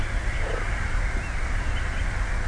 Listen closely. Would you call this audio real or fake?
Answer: real